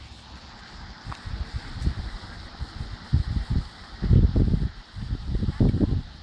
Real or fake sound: real